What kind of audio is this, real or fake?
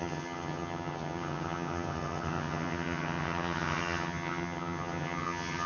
fake